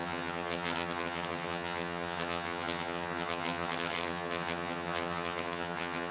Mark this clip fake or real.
fake